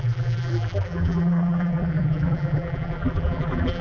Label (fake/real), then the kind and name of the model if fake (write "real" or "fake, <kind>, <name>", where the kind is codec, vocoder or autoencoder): fake, vocoder, BigVGAN v2